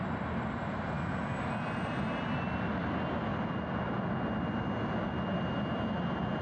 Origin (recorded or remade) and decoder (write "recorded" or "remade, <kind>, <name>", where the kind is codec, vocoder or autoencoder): recorded